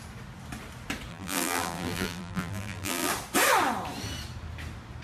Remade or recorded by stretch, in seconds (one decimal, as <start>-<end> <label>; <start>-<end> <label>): 0.0-1.1 recorded; 1.1-3.1 remade; 3.1-5.0 recorded